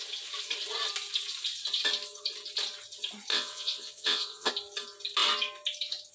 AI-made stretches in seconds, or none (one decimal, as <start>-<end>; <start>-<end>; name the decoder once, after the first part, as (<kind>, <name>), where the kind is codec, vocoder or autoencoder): 3.3-4.5 (vocoder, WaveNeXt)